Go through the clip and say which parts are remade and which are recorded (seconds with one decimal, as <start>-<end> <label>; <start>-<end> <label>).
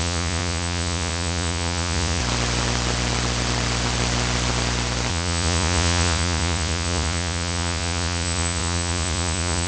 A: 0.0-2.2 remade; 2.2-5.1 recorded; 5.1-9.7 remade